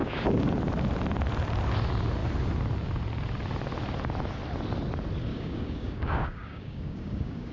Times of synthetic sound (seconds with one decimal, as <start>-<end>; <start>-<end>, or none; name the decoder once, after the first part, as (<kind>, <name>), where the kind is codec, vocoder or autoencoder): 0.0-0.5 (codec, DAC); 5.3-7.5